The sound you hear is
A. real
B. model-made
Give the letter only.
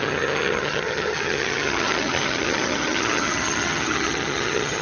B